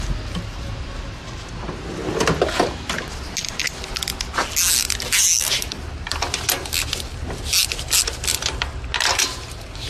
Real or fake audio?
real